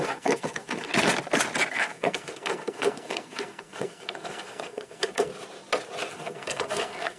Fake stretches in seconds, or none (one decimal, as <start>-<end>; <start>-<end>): 0.0-0.9; 1.7-5.3; 6.1-7.2